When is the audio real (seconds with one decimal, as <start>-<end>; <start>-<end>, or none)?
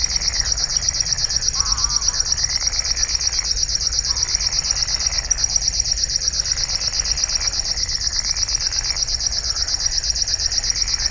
0.0-11.1